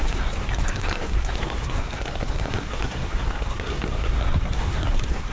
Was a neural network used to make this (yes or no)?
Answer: yes